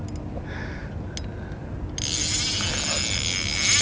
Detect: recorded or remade recorded